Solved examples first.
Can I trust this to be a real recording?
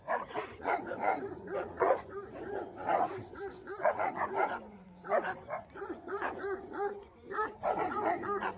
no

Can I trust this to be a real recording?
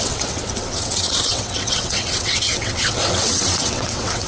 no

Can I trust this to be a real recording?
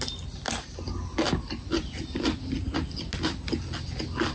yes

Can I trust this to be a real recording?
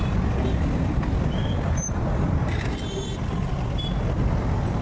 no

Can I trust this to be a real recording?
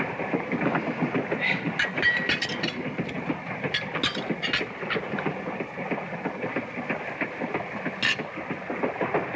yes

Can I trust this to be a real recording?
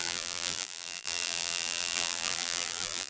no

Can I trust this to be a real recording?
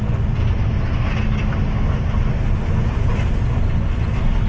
yes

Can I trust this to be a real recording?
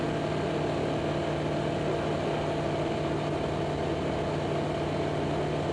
yes